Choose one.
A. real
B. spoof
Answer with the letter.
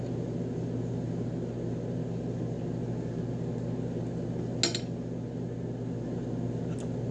A